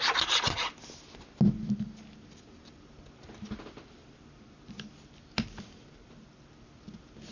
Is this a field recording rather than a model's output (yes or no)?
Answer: yes